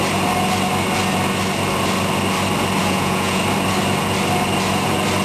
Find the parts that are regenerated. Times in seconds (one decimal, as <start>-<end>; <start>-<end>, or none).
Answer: 2.8-3.4